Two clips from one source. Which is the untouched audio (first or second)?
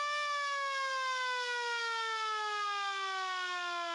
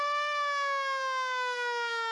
first